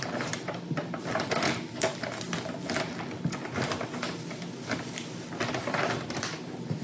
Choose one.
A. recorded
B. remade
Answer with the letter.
A